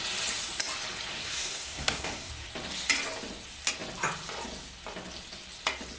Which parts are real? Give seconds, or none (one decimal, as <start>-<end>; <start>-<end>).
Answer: 0.0-1.1; 2.3-6.0